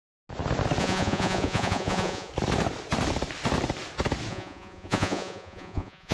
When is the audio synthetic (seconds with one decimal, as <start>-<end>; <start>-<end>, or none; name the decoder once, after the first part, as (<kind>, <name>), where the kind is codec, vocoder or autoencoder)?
0.8-2.3 (vocoder, Vocos); 4.3-6.1